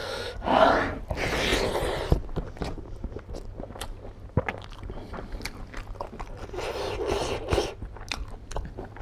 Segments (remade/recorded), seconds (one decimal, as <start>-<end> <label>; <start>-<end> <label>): 0.0-0.7 remade; 0.7-9.0 recorded